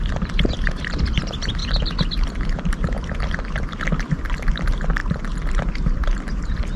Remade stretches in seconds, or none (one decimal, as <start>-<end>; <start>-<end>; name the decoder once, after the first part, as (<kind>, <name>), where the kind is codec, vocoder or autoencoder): 0.0-5.0 (vocoder, BigVGAN v2); 5.5-6.0